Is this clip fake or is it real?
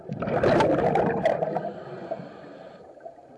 real